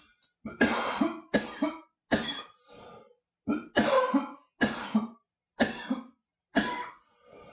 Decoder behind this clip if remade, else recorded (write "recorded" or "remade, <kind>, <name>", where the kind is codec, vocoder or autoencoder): recorded